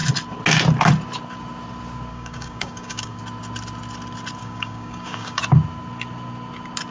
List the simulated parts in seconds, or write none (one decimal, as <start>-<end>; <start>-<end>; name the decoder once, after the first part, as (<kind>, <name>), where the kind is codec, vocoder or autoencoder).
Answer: 2.1-3.2 (codec, DAC); 4.4-5.4

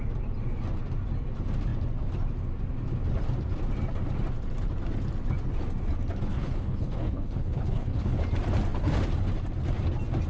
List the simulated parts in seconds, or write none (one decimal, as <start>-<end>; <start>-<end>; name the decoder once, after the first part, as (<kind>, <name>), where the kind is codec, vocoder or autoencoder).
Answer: 6.3-8.2 (codec, HILCodec)

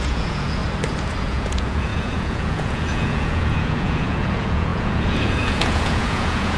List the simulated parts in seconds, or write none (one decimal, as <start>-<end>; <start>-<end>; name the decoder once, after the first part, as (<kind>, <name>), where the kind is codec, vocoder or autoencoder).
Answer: 0.0-0.6 (vocoder, Vocos); 1.2-6.6